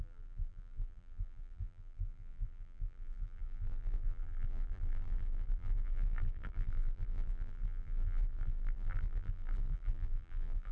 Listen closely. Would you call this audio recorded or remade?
remade